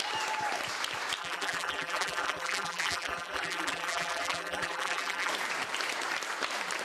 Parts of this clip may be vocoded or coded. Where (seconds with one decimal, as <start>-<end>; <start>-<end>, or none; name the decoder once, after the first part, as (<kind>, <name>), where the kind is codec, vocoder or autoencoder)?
1.2-5.3 (vocoder, BigVGAN v2)